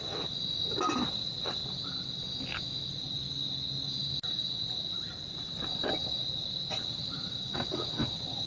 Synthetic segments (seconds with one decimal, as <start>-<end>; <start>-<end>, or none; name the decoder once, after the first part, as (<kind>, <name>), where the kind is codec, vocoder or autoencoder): 0.0-0.4 (vocoder, WaveNeXt); 1.1-1.6; 6.7-8.5